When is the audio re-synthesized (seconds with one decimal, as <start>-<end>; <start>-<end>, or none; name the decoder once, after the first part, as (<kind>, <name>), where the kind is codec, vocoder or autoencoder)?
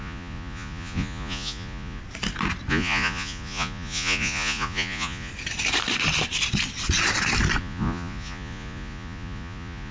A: 0.0-2.0 (vocoder, Vocos); 2.7-5.3; 7.6-9.9